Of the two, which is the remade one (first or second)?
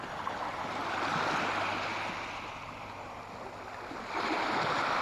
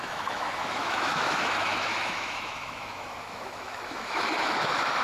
second